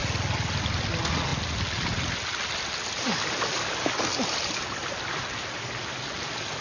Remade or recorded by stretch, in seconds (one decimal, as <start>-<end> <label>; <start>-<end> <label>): 0.0-6.6 recorded